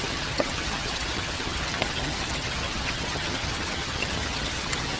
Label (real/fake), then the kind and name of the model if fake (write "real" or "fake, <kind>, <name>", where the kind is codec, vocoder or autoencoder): fake, vocoder, HiFi-GAN